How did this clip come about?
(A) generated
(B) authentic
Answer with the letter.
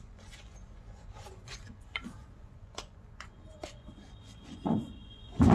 A